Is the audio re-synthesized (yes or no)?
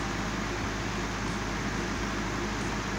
no